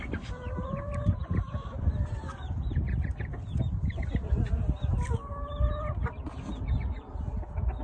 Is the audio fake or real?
real